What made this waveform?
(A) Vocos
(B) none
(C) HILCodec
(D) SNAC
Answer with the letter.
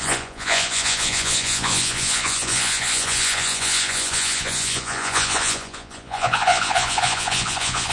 A